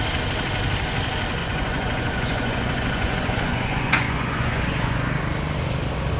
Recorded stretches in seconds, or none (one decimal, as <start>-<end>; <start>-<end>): 0.0-1.4; 5.1-6.2